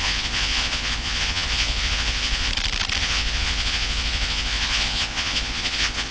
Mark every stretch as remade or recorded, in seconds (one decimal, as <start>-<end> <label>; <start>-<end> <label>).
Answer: 0.0-2.5 remade; 2.5-3.0 recorded; 3.0-6.1 remade